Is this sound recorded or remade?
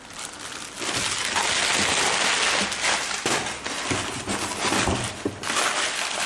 recorded